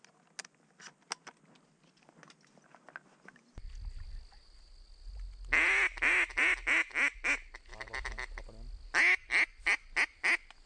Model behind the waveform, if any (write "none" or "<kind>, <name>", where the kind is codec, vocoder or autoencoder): none